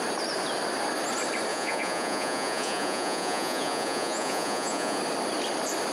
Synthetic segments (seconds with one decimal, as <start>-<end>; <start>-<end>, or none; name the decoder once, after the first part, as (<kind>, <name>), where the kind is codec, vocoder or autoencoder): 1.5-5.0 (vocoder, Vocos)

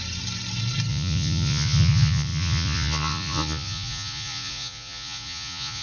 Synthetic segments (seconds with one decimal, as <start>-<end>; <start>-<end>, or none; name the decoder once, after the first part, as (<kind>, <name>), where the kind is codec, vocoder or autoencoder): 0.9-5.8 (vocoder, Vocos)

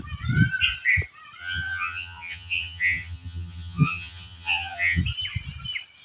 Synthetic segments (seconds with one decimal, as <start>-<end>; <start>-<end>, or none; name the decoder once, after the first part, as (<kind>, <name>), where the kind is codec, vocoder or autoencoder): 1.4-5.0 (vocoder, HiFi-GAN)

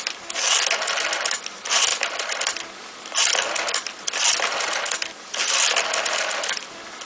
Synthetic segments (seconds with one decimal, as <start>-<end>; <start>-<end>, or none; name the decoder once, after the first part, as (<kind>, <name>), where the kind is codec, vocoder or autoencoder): none

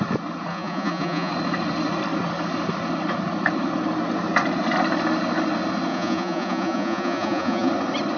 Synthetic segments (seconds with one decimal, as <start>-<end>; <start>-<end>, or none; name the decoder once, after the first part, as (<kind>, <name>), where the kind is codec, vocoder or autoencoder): 0.5-1.3 (vocoder, Vocos); 5.9-7.7

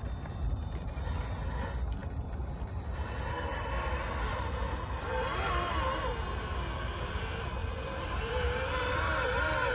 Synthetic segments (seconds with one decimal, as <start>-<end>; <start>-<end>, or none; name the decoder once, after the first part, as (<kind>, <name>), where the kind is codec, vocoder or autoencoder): 7.6-8.7 (vocoder, BigVGAN v2)